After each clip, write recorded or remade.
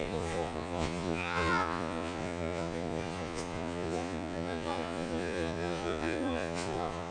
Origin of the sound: remade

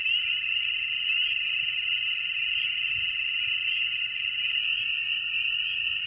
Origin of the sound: recorded